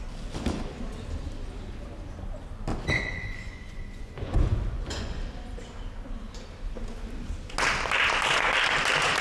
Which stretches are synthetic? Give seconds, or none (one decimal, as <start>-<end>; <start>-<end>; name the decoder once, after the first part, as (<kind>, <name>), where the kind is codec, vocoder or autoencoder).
2.7-5.2 (vocoder, Vocos)